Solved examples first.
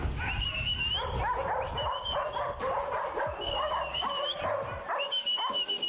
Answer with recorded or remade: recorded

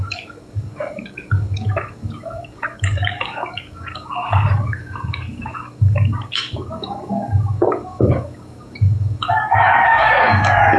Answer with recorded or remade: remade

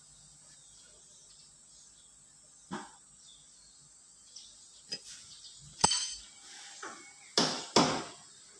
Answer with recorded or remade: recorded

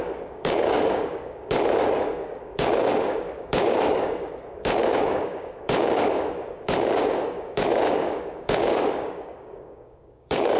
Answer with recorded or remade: remade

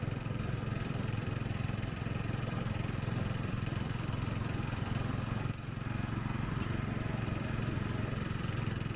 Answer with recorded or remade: remade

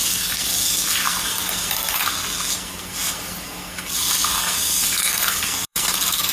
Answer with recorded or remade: remade